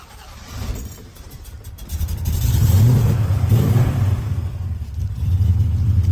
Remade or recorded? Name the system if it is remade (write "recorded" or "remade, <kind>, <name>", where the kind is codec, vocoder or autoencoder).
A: remade, vocoder, BigVGAN v2